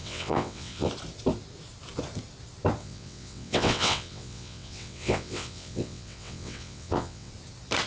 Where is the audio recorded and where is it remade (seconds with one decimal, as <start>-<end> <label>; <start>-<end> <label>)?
0.0-0.9 remade; 0.9-2.8 recorded; 2.8-7.3 remade; 7.3-7.9 recorded